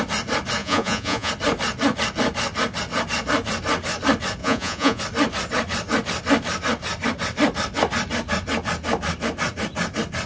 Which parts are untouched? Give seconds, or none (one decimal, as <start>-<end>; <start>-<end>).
0.0-0.6; 1.3-4.4; 5.0-10.3